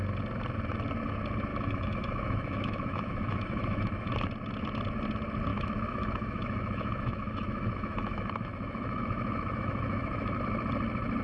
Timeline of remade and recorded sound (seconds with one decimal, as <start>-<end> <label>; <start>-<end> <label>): 0.0-1.5 recorded; 1.5-4.1 remade; 4.1-5.5 recorded; 5.5-10.4 remade; 10.4-11.2 recorded